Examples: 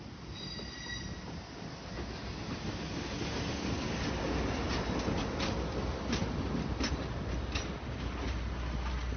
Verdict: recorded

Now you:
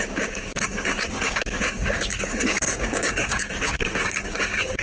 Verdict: remade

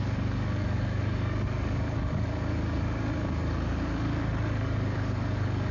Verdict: remade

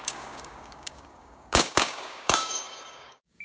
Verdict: remade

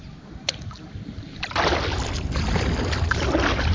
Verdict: recorded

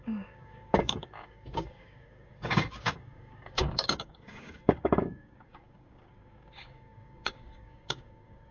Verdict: remade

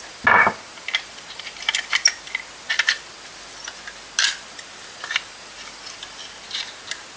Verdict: recorded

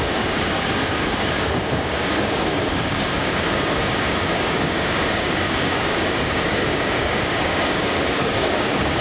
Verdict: remade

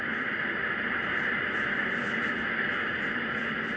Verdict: recorded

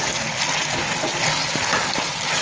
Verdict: recorded